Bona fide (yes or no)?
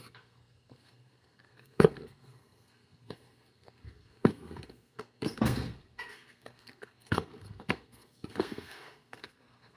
no